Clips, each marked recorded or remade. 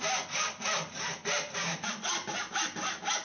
recorded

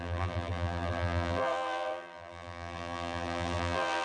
remade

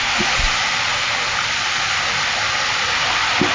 recorded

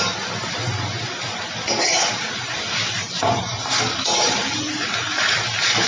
recorded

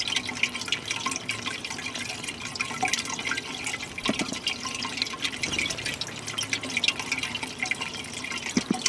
recorded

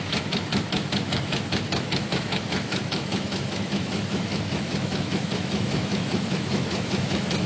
remade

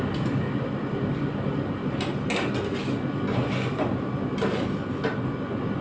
recorded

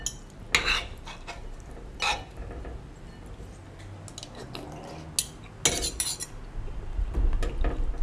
recorded